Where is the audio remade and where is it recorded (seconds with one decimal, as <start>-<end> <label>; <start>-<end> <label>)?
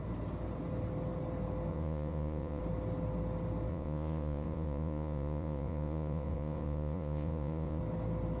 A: 0.0-1.7 recorded; 1.7-2.6 remade; 2.6-3.7 recorded; 3.7-7.8 remade; 7.8-8.4 recorded